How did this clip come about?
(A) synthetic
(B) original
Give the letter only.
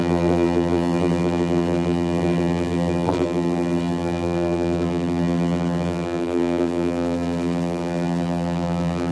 A